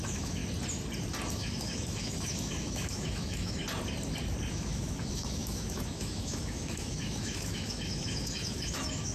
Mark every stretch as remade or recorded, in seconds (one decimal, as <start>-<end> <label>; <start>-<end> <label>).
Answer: 0.0-0.4 remade; 0.4-1.3 recorded; 1.3-3.6 remade; 3.6-4.5 recorded; 4.5-9.1 remade